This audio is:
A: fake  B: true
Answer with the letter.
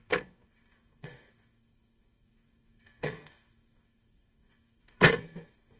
A